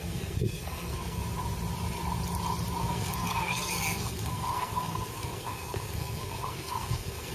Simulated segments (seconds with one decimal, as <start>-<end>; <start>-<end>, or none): 0.0-1.2; 2.8-7.3

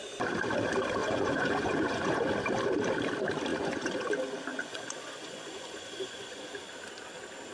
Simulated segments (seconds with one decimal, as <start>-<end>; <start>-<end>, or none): 1.0-2.3; 3.5-4.1; 4.5-6.5

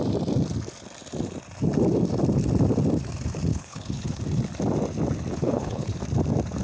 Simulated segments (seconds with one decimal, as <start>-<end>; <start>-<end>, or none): 3.5-4.2; 5.3-6.0